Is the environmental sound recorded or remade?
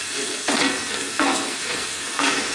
remade